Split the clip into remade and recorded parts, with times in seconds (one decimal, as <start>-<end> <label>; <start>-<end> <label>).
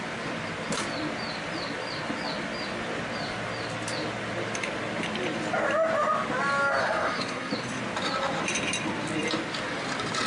0.0-6.8 recorded; 6.8-7.5 remade; 7.5-10.3 recorded